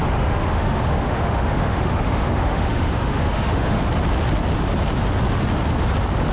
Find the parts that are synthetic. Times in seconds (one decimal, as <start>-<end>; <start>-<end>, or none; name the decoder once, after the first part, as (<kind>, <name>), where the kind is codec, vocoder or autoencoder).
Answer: 0.0-3.8 (autoencoder, DAC-VAE)